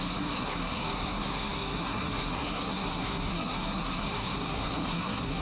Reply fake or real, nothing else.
fake